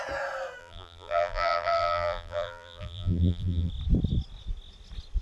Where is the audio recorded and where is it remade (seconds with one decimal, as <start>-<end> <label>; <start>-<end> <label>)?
0.0-0.6 recorded; 0.6-3.7 remade; 3.7-5.2 recorded